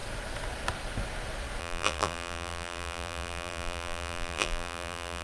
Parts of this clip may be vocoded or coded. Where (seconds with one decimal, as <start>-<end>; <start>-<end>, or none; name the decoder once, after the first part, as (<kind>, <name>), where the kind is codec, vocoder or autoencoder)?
1.6-5.2 (vocoder, BigVGAN v2)